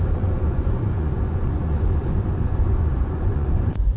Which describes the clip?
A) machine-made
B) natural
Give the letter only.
A